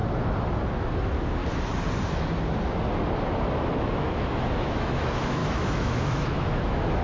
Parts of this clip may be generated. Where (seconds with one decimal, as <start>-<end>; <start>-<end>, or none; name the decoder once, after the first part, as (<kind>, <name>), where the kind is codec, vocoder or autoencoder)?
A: 0.9-1.4 (autoencoder, DAC-VAE); 3.3-7.0